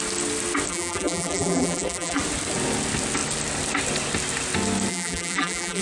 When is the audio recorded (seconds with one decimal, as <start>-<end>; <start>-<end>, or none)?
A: 0.0-0.7; 2.2-4.9